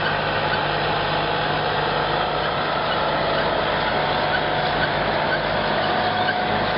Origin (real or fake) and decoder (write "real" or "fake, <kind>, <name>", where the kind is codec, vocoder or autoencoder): real